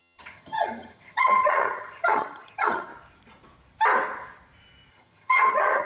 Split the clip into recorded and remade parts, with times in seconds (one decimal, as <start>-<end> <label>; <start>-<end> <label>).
0.0-2.9 remade; 2.9-4.9 recorded; 4.9-5.9 remade